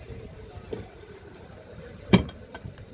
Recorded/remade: remade